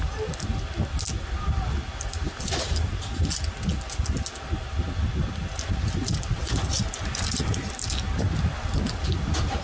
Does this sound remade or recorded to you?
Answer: recorded